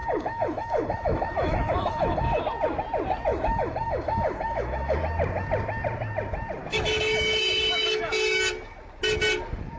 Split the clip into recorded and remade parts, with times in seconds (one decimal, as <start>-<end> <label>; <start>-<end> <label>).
0.0-2.4 remade; 2.4-3.3 recorded; 3.3-5.0 remade; 5.0-6.7 recorded; 6.7-8.4 remade; 8.4-9.8 recorded